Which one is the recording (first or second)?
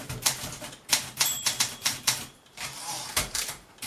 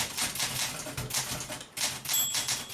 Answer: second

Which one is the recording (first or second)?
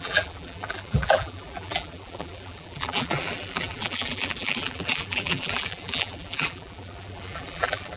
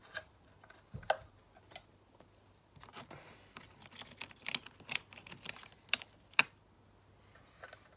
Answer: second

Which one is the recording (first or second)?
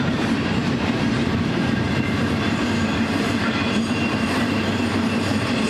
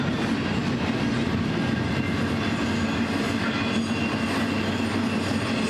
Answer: second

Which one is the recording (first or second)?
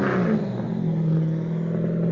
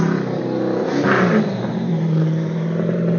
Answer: first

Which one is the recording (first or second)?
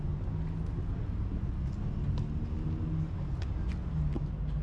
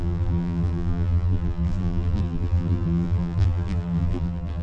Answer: first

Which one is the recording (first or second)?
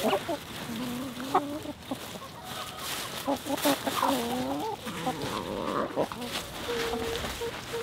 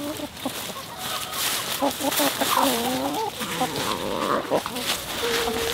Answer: first